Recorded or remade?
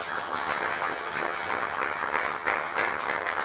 remade